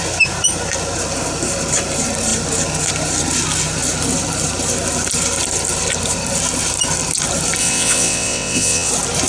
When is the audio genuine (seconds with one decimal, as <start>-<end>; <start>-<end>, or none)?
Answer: 0.0-7.6; 8.9-9.3